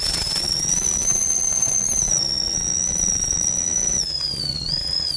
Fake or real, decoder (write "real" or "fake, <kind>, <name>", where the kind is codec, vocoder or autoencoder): fake, vocoder, Vocos